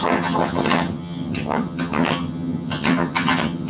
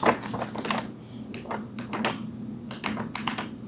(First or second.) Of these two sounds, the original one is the second